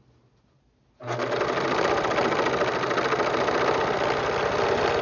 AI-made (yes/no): no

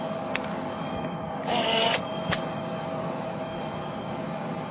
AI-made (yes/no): yes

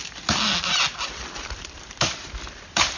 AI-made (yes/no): no